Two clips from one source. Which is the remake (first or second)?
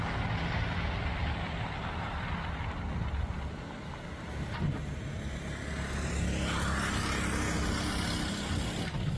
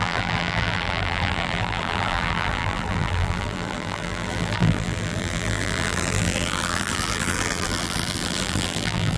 second